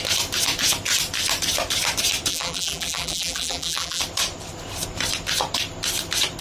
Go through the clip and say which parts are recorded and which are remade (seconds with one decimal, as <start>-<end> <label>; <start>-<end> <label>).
0.0-2.3 recorded; 2.3-4.0 remade; 4.0-6.4 recorded